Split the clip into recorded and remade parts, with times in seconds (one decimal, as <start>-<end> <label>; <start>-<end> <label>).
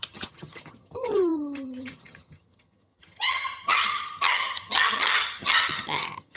0.0-6.4 remade